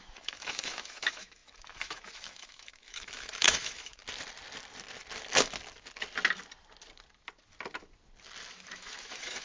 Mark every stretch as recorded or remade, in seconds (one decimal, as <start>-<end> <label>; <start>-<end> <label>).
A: 0.0-4.0 remade; 4.0-8.5 recorded; 8.5-9.4 remade